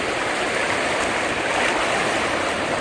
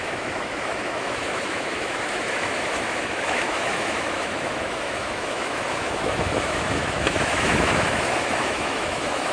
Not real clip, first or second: second